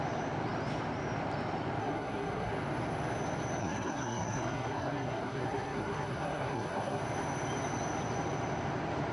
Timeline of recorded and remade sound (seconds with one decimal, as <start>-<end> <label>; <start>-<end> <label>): 0.0-1.8 recorded; 1.8-2.5 remade; 2.5-3.6 recorded; 3.6-7.0 remade; 7.0-9.1 recorded